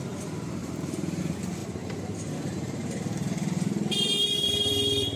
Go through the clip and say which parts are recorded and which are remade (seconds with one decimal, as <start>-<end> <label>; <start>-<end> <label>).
0.0-0.6 recorded; 0.6-1.2 remade; 1.2-1.6 recorded; 1.6-4.7 remade; 4.7-5.2 recorded